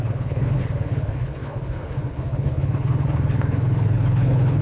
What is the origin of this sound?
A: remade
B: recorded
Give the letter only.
A